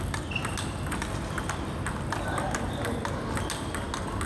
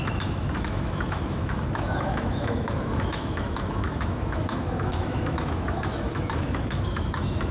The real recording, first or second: first